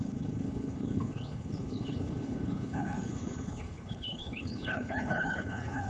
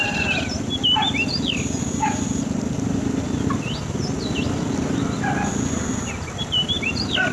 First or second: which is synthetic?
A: first